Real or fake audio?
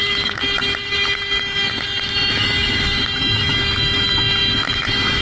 fake